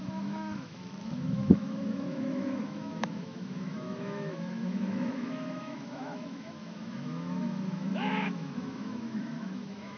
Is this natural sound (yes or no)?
no